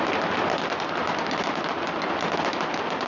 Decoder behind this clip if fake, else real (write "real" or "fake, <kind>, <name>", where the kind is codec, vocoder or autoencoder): real